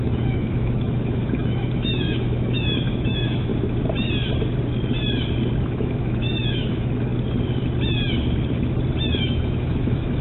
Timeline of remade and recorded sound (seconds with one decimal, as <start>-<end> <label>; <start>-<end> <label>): 0.0-3.5 remade; 3.5-5.6 recorded; 5.6-7.1 remade; 7.1-9.2 recorded; 9.2-10.2 remade

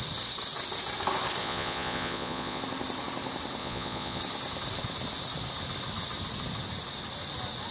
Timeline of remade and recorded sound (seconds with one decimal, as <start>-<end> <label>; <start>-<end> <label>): 0.0-1.4 recorded; 1.4-2.6 remade; 2.6-3.6 recorded; 3.6-4.2 remade; 4.2-7.7 recorded

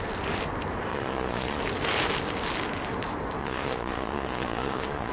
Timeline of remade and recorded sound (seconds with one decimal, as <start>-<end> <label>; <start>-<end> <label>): 0.0-0.9 recorded; 0.9-1.6 remade; 1.6-3.4 recorded; 3.4-5.1 remade

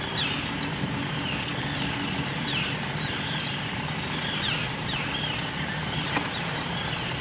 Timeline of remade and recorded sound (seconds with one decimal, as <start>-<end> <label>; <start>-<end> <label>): 0.0-7.2 recorded

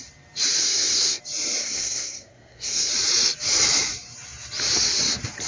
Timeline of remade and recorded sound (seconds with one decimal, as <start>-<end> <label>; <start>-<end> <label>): 0.0-0.6 recorded; 0.6-1.2 remade; 1.2-1.6 recorded; 1.6-2.9 remade; 2.9-5.5 recorded

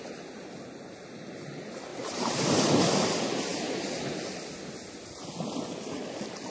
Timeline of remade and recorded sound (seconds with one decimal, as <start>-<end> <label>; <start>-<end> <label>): 0.0-1.9 recorded; 1.9-2.7 remade; 2.7-3.5 recorded; 3.5-4.0 remade; 4.0-6.5 recorded